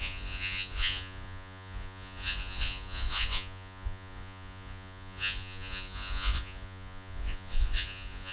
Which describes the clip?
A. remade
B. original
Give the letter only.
A